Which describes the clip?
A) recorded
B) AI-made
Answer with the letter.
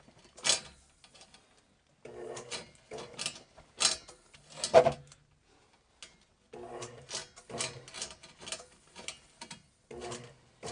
A